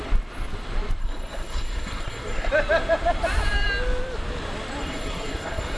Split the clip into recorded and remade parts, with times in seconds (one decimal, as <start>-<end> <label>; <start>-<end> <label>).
0.0-1.0 recorded; 1.0-2.5 remade; 2.5-4.8 recorded; 4.8-5.8 remade